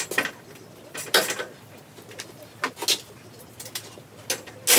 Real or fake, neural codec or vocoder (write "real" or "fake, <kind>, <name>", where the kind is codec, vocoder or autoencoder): real